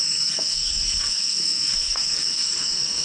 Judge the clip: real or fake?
fake